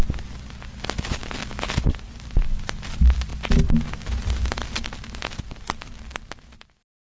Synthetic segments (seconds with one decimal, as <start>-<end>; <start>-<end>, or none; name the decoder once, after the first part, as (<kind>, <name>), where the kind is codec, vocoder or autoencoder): none